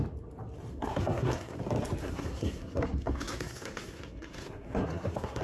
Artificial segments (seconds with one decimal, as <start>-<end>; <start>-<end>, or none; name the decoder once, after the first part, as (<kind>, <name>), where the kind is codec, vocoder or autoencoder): 0.7-1.6 (codec, SNAC); 2.0-5.4